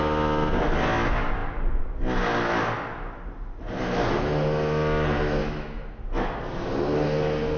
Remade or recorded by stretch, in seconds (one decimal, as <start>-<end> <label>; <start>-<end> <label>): 0.0-5.4 recorded; 5.4-6.0 remade; 6.0-7.6 recorded